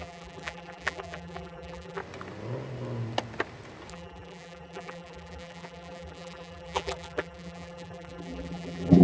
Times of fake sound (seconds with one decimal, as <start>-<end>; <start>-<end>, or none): 0.0-2.0; 3.9-9.0